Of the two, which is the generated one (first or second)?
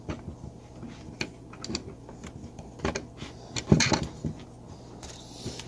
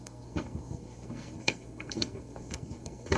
second